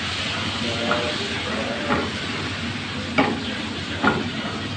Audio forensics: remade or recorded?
recorded